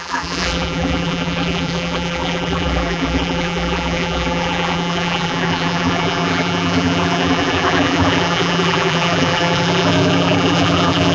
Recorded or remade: remade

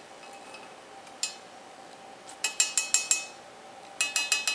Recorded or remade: recorded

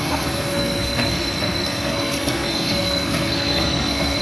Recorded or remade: remade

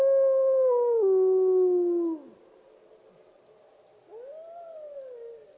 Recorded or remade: recorded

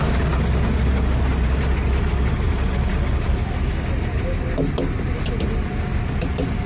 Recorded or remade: recorded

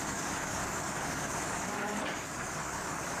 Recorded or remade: remade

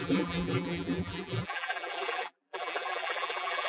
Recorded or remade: remade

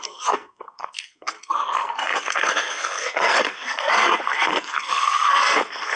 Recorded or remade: remade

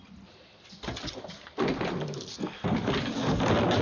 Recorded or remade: recorded